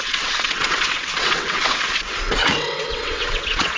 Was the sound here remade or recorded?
remade